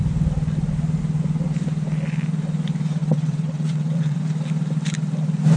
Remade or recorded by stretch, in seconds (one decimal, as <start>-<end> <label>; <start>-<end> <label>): 0.0-3.0 recorded; 3.0-4.2 remade; 4.2-5.6 recorded